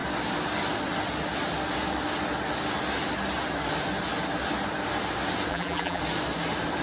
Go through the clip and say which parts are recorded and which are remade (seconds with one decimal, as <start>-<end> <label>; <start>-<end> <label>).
0.0-5.5 recorded; 5.5-6.0 remade; 6.0-6.8 recorded